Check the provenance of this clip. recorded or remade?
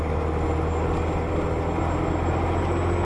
recorded